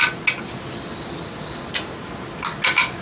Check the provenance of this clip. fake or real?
real